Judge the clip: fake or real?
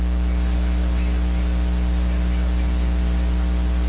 real